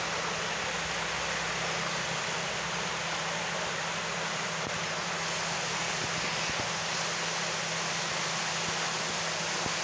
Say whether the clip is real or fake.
real